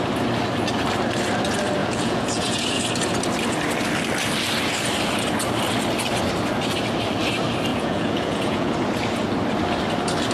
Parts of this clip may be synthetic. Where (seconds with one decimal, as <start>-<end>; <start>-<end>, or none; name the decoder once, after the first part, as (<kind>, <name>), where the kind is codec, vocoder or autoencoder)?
1.8-2.8 (vocoder, Vocos); 7.7-8.7